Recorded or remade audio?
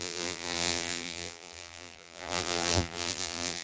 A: remade